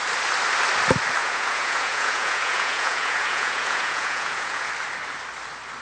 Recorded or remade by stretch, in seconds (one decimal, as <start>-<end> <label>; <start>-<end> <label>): 0.0-1.2 recorded; 1.2-4.7 remade; 4.7-5.8 recorded